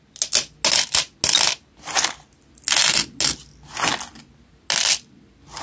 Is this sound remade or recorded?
recorded